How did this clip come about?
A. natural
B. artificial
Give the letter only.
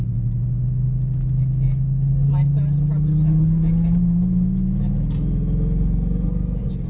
A